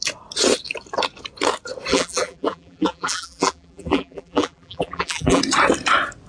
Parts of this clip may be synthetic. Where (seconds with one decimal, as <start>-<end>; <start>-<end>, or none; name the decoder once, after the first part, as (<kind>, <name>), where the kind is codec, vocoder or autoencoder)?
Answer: 1.9-5.4 (vocoder, BigVGAN v2)